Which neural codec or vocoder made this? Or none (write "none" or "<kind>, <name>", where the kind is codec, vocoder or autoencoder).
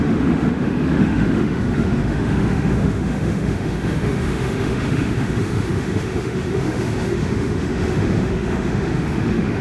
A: autoencoder, DAC-VAE